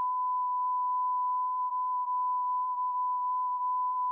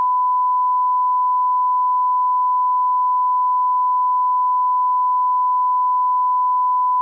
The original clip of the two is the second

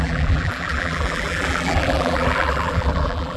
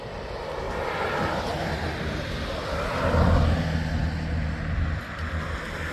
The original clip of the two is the second